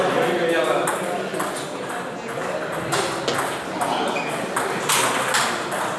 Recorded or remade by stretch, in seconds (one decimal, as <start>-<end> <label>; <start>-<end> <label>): 0.0-6.0 recorded